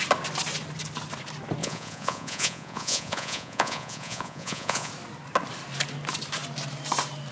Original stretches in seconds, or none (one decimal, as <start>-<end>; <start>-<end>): 0.0-1.6; 4.9-7.3